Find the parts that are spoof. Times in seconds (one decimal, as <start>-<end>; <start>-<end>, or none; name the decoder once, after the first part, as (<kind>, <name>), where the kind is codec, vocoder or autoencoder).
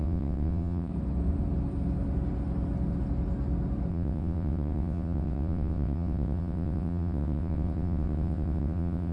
0.0-0.9 (vocoder, WaveNeXt); 3.9-9.1